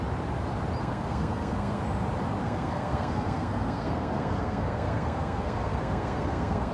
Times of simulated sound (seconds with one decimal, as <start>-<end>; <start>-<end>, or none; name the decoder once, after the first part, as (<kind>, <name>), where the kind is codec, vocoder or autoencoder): 0.8-1.8 (codec, SNAC); 2.4-6.7